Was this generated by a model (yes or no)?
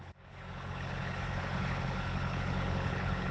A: yes